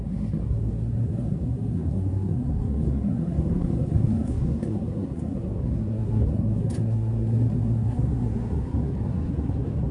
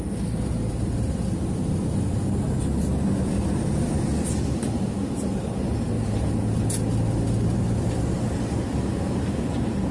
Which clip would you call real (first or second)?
second